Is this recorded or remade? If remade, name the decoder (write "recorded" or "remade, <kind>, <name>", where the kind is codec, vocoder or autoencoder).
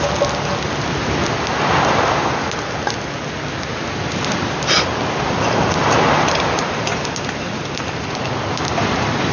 recorded